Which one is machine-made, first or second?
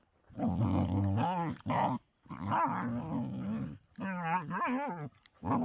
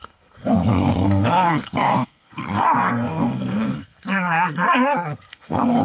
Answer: second